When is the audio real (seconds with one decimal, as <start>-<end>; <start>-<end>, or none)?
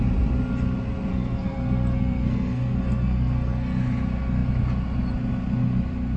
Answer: 0.0-1.1; 3.8-6.2